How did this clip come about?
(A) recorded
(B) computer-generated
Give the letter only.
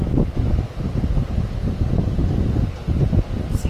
A